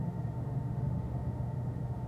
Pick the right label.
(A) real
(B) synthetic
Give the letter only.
B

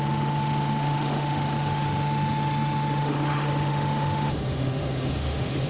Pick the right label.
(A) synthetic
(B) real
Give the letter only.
A